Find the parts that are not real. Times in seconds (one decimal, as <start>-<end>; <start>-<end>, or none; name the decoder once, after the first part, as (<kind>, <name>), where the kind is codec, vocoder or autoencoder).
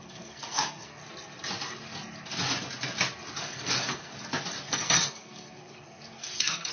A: 0.0-1.0 (codec, SNAC); 3.4-4.1; 4.7-6.7